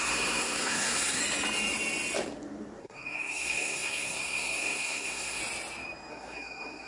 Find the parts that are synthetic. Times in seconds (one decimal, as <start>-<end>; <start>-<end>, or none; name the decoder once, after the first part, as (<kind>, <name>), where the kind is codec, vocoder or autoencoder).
0.0-1.2 (codec, SNAC); 2.8-5.4; 6.1-6.9